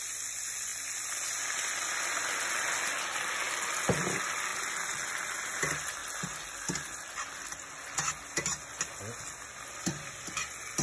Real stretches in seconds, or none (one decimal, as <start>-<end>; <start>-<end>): 0.0-10.8